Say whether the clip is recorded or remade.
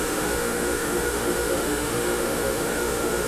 remade